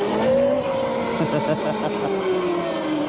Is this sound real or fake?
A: real